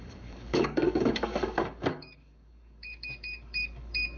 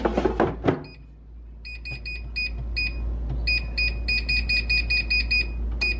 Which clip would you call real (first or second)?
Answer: second